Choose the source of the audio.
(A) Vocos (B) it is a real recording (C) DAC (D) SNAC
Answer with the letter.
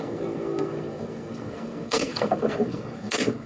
D